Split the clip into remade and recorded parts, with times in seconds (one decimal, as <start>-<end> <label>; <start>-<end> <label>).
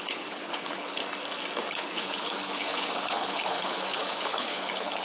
0.0-1.0 remade; 1.0-1.7 recorded; 1.7-5.0 remade